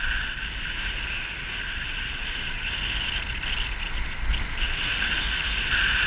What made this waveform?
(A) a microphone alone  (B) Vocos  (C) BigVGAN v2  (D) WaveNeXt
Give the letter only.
A